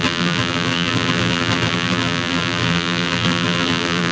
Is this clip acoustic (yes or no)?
no